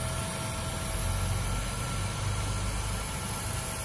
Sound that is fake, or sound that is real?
real